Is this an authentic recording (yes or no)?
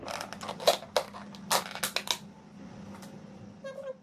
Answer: yes